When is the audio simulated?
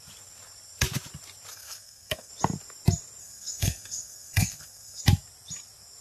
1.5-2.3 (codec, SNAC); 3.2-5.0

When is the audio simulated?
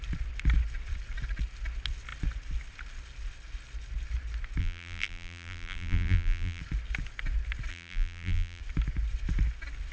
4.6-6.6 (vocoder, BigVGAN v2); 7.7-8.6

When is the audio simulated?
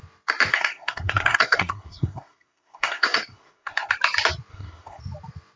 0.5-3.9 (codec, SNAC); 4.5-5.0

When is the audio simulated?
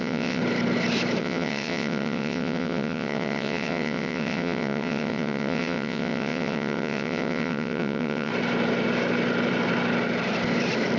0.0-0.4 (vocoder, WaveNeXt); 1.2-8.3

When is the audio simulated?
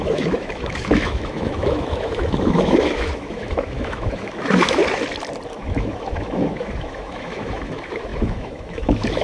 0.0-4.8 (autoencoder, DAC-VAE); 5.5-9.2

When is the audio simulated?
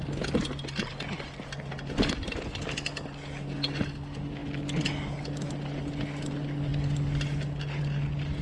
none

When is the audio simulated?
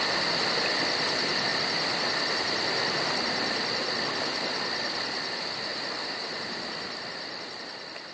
1.5-2.2 (vocoder, BigVGAN v2)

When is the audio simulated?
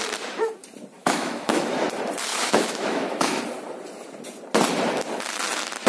1.0-1.7 (autoencoder, DAC-VAE); 2.3-3.4